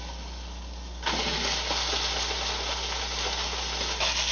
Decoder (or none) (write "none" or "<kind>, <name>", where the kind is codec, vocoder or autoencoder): none